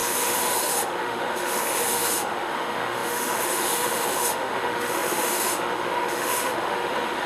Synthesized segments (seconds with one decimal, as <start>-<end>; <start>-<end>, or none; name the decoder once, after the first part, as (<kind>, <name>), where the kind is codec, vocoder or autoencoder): 0.0-7.3 (autoencoder, DAC-VAE)